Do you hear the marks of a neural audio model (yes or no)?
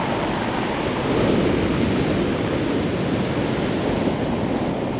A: no